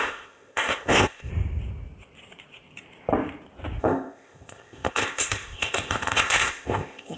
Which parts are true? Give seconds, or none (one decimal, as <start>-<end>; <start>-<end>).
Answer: 1.3-3.8